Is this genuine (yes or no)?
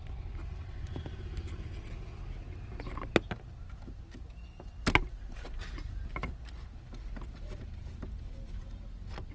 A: yes